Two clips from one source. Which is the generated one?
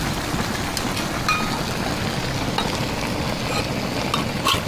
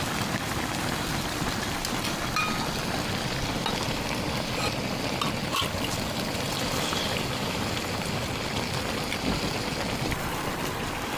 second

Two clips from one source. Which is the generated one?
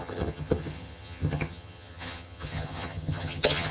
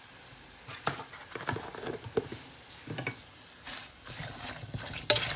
first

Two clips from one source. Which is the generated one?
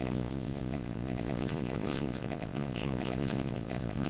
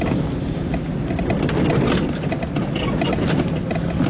first